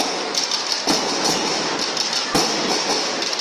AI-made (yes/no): no